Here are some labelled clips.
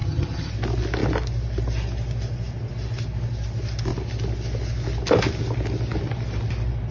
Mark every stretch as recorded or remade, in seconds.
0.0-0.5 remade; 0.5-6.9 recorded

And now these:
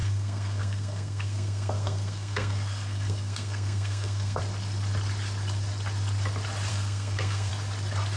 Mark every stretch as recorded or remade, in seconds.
0.0-4.4 remade; 4.4-6.7 recorded; 6.7-7.5 remade; 7.5-8.2 recorded

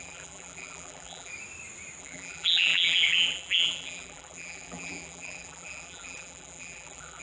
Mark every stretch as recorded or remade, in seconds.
0.0-1.3 remade; 1.3-2.0 recorded; 2.0-7.2 remade

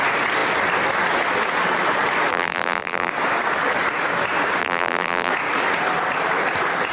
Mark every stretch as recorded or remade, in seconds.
0.0-2.3 recorded; 2.3-3.1 remade; 3.1-4.6 recorded; 4.6-5.3 remade; 5.3-6.9 recorded